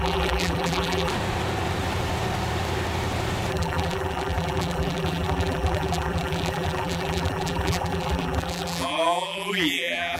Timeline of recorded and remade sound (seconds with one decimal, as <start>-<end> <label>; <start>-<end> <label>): 0.0-1.1 remade; 1.1-3.5 recorded; 3.5-10.2 remade